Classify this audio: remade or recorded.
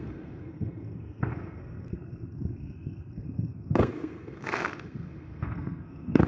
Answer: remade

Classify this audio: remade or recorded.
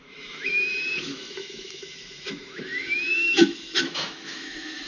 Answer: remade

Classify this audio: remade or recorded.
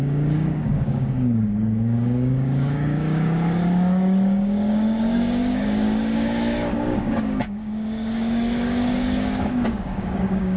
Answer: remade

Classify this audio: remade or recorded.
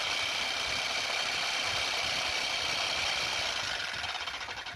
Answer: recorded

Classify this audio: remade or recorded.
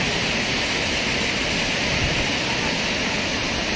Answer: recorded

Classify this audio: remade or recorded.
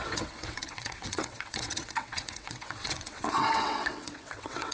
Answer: remade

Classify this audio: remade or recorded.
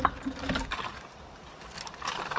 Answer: recorded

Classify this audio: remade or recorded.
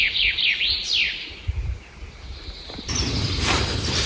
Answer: remade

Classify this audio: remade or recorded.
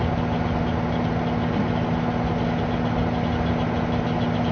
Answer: recorded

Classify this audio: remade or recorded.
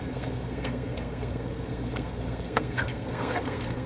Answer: remade